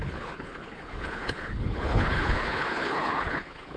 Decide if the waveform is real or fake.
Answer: fake